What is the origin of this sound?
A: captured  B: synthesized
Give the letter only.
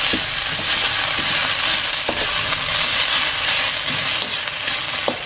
A